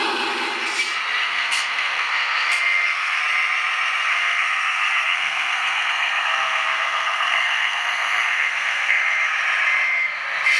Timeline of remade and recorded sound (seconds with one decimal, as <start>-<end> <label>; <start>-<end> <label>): 0.0-1.2 recorded; 1.2-3.2 remade; 3.2-4.1 recorded; 4.1-9.0 remade; 9.0-10.6 recorded